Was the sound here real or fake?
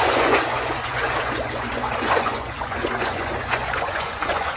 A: fake